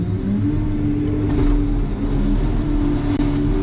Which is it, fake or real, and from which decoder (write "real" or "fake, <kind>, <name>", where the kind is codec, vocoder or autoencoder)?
real